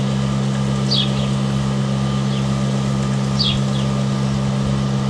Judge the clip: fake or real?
real